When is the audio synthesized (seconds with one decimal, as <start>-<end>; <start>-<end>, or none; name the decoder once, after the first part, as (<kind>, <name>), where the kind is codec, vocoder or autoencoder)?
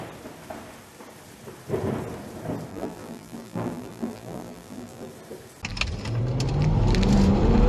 2.7-5.1 (vocoder, BigVGAN v2)